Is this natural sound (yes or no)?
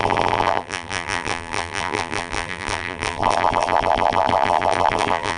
no